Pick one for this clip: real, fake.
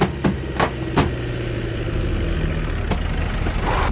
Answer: real